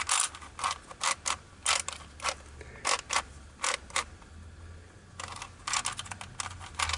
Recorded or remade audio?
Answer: recorded